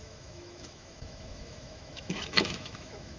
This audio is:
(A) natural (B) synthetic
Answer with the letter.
B